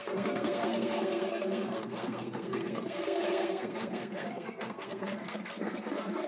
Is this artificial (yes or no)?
yes